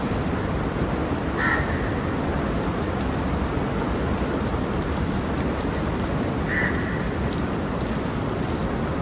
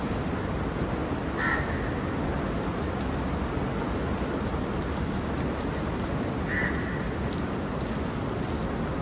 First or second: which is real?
second